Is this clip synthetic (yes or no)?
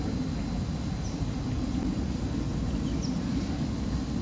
no